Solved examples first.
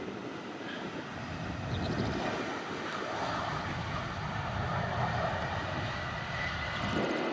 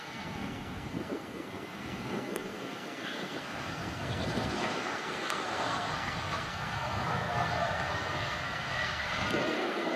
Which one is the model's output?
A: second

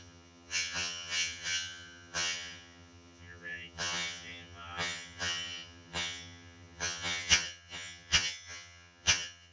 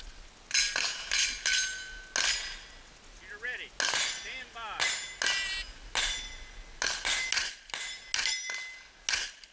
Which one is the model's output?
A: first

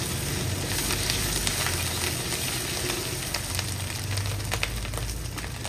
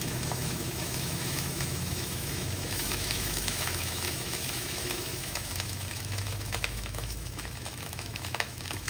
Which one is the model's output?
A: second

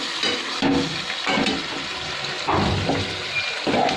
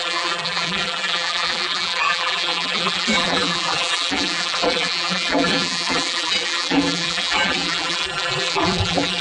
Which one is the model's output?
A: second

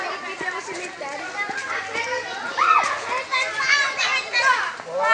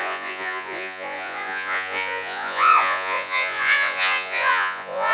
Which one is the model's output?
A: second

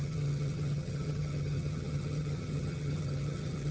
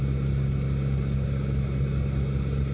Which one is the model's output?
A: first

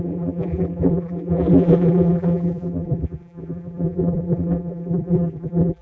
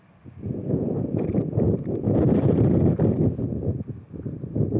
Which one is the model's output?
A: first